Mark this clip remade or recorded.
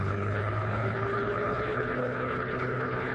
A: remade